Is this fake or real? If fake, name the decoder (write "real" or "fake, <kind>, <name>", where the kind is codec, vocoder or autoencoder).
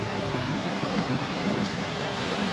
fake, codec, SNAC